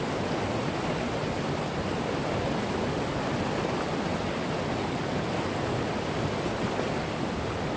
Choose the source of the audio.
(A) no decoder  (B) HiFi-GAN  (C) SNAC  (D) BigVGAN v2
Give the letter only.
A